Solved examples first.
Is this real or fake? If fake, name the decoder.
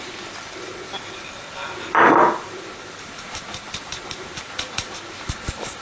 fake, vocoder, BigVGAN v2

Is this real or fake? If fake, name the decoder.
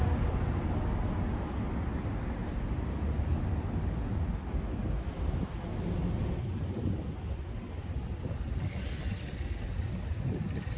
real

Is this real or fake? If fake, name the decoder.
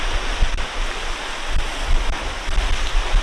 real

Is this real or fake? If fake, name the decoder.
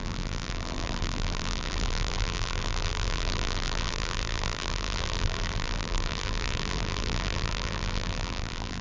fake, vocoder, BigVGAN v2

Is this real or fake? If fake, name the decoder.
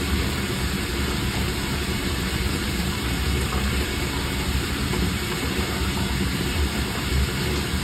fake, vocoder, BigVGAN v2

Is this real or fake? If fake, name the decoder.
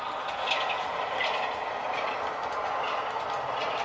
real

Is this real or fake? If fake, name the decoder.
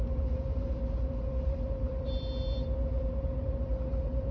fake, vocoder, BigVGAN v2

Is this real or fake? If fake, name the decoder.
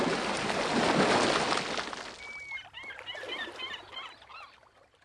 real